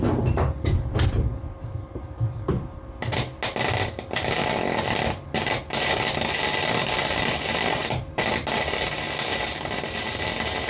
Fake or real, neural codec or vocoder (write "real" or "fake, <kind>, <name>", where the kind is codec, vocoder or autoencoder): real